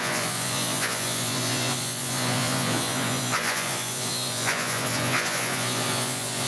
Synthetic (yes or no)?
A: yes